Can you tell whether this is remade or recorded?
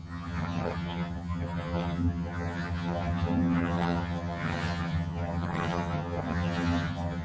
remade